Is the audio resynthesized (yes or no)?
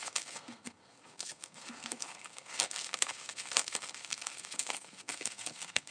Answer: yes